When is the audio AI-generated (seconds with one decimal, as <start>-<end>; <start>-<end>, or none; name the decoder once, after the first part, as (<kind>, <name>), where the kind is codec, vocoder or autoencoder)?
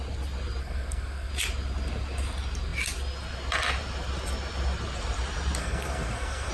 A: 0.6-1.3 (codec, SNAC); 5.6-6.5